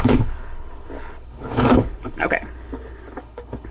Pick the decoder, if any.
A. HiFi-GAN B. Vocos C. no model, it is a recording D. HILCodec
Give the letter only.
D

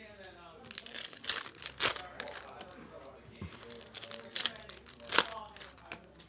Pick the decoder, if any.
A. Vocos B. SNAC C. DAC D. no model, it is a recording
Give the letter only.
D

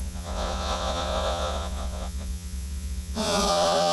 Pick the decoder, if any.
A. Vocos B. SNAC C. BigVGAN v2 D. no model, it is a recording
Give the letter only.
A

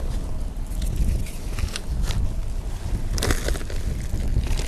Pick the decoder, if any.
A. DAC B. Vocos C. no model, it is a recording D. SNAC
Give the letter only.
C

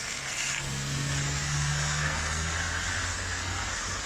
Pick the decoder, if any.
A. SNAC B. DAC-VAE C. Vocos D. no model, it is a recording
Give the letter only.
A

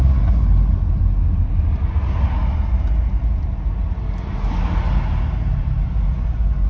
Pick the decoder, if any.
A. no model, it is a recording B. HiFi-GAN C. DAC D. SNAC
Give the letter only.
A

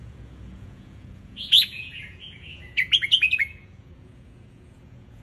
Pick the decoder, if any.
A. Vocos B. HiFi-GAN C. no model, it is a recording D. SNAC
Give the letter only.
A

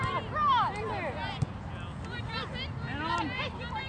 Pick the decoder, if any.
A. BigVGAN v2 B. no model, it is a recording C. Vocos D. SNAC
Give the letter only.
B